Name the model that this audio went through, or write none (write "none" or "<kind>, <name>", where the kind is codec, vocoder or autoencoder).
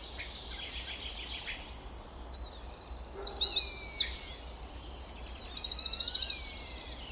none